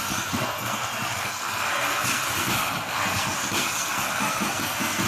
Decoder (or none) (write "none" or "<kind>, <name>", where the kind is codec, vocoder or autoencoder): codec, SNAC